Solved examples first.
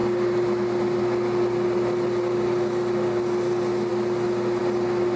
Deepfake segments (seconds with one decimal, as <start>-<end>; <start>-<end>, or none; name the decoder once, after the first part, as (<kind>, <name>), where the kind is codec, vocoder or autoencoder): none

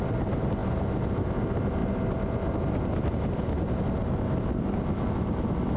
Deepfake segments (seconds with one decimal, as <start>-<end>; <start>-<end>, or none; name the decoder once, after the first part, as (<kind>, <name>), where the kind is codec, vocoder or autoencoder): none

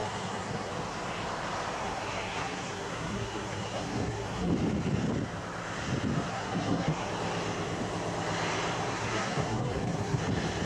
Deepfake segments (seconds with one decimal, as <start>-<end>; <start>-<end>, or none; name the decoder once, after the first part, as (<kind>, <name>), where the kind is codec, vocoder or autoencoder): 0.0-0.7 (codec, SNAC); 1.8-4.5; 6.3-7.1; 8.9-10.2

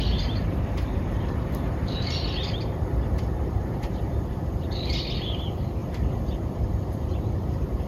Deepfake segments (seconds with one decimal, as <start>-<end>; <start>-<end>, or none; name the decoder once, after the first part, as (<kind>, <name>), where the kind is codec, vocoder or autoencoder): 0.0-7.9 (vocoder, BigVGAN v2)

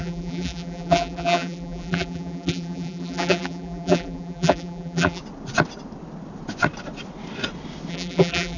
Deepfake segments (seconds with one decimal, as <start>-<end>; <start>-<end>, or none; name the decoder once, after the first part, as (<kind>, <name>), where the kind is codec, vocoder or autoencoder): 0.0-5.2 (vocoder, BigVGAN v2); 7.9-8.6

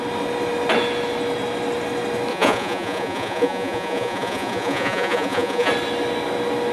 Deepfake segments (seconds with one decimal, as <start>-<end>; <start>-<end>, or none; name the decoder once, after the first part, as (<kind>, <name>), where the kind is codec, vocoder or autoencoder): 2.3-5.7 (vocoder, Vocos)

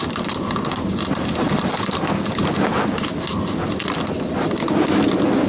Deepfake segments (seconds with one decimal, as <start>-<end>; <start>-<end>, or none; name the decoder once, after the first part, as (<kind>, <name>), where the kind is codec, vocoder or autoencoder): none